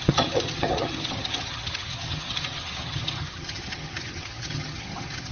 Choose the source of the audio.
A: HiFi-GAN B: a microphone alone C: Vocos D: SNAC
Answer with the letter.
A